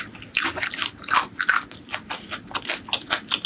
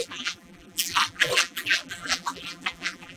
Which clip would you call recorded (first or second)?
first